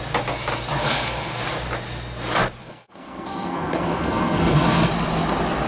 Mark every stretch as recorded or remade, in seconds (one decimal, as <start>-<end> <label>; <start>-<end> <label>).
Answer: 0.0-0.8 recorded; 0.8-1.4 remade; 1.4-2.6 recorded; 2.6-4.9 remade; 4.9-5.7 recorded